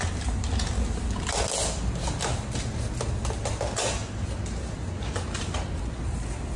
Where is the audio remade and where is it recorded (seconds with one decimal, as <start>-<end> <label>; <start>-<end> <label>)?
0.0-6.6 recorded